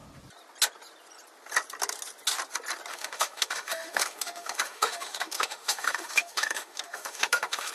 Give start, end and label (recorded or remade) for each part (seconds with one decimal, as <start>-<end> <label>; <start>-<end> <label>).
0.0-2.9 recorded; 2.9-7.7 remade

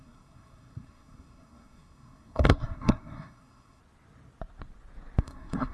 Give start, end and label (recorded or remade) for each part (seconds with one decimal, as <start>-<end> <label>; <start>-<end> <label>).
0.0-3.8 remade; 3.8-5.2 recorded; 5.2-5.7 remade

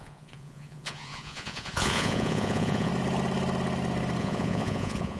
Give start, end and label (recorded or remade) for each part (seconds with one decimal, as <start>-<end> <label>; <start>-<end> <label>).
0.0-2.9 remade; 2.9-4.2 recorded; 4.2-5.2 remade

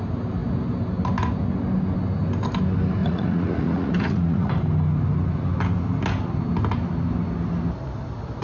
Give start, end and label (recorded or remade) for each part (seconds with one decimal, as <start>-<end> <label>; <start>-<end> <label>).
0.0-3.0 recorded; 3.0-4.5 remade; 4.5-8.4 recorded

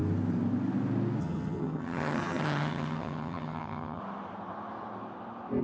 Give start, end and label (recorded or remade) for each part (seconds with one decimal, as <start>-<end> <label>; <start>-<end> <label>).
0.0-1.2 recorded; 1.2-4.0 remade; 4.0-5.6 recorded

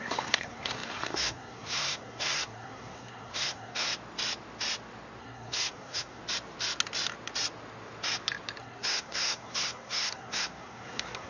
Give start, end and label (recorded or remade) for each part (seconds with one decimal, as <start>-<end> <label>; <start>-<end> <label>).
0.0-3.9 remade; 3.9-5.2 recorded; 5.2-6.2 remade; 6.2-8.6 recorded; 8.6-11.3 remade

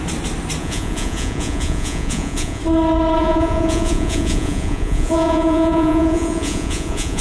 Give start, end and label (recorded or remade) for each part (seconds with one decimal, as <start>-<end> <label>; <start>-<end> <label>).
0.0-0.6 recorded; 0.6-2.6 remade; 2.6-3.2 recorded; 3.2-7.2 remade